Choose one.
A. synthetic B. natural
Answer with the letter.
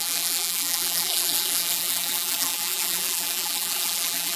A